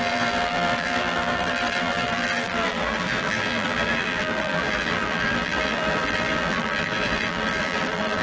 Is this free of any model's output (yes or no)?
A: no